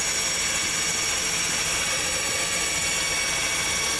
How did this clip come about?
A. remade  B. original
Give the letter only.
B